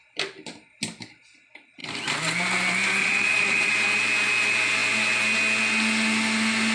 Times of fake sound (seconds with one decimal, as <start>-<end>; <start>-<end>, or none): 3.0-3.7